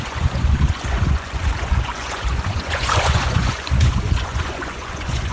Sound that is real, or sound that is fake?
fake